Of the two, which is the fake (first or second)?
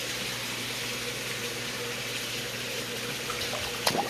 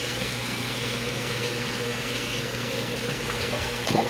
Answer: second